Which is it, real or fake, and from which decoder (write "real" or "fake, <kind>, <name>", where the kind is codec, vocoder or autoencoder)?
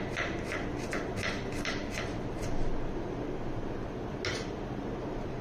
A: real